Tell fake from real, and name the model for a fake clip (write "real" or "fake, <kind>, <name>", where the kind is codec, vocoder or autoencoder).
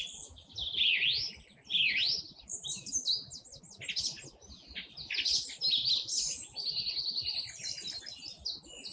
real